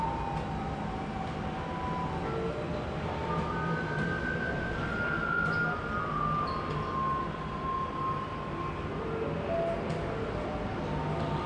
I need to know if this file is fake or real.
real